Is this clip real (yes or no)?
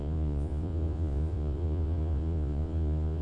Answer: no